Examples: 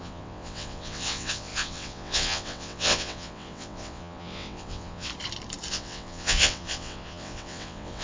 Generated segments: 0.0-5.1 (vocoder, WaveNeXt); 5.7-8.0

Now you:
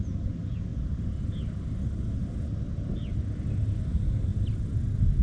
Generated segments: none

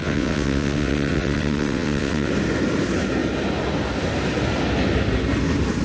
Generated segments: 0.0-2.3 (vocoder, WaveNeXt)

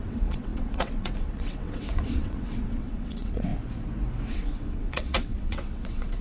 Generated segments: 0.0-3.5 (vocoder, WaveNeXt); 4.3-6.2

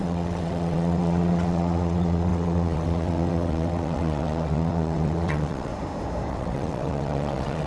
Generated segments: 0.0-5.7 (vocoder, WaveNeXt); 6.3-7.7

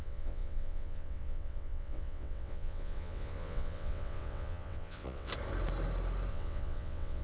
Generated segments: 0.0-5.3 (vocoder, WaveNeXt); 6.3-7.2

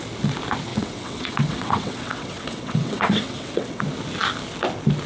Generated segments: 0.7-3.8 (vocoder, WaveNeXt)